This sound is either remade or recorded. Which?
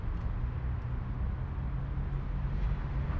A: recorded